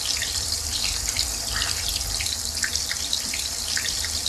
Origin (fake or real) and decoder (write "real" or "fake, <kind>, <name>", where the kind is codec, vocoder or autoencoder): fake, vocoder, BigVGAN v2